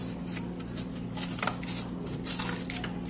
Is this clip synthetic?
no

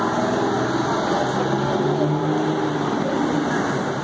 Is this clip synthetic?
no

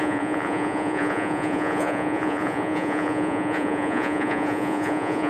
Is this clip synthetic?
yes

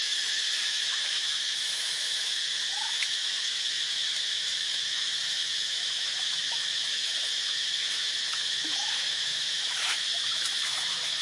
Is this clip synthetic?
yes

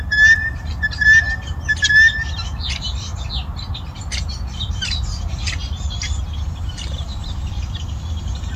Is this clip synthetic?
no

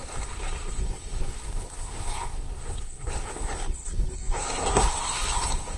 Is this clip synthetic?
yes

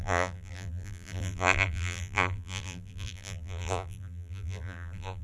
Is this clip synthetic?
yes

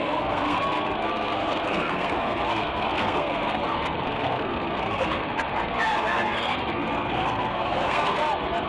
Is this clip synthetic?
yes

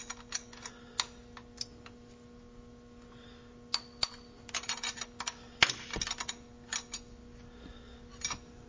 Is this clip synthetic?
no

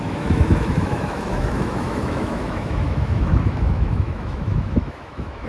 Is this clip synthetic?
yes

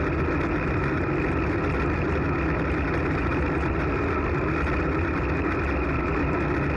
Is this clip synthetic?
no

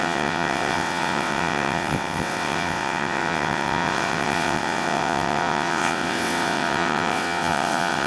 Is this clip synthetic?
yes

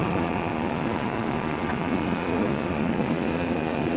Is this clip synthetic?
yes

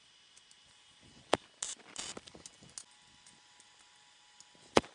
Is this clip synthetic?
no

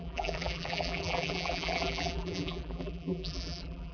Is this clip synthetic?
yes